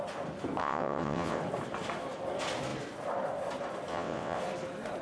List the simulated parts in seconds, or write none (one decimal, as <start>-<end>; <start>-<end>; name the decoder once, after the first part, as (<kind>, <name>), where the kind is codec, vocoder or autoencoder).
0.6-1.4 (vocoder, WaveNeXt); 3.9-4.4

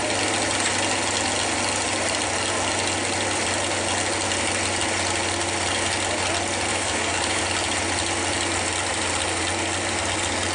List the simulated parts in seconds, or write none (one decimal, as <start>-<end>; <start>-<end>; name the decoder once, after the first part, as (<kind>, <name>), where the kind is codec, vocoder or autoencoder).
6.7-7.4 (codec, DAC)

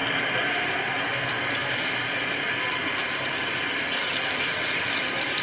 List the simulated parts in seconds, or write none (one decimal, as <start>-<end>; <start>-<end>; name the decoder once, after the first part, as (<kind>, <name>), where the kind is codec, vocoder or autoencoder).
0.8-5.4 (vocoder, BigVGAN v2)

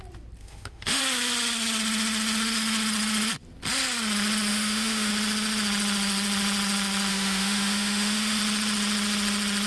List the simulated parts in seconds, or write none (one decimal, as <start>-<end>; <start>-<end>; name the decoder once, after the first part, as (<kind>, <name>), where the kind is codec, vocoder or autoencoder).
0.4-1.0 (autoencoder, DAC-VAE); 4.5-5.1; 7.1-8.4